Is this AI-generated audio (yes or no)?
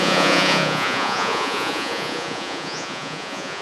yes